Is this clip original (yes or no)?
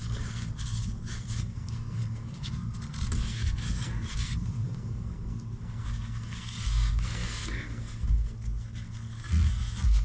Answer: no